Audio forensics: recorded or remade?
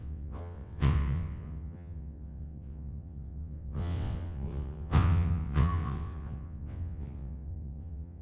remade